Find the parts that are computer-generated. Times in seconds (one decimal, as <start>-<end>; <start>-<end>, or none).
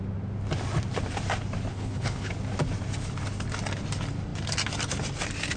1.7-2.3